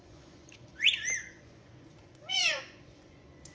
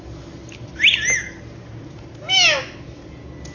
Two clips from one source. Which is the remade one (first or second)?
first